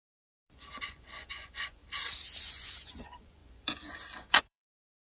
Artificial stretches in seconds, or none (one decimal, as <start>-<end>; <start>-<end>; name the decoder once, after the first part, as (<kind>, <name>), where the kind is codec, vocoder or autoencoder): 0.0-1.8 (vocoder, Vocos); 2.4-5.1